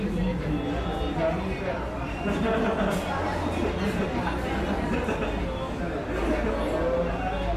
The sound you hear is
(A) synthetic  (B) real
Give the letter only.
B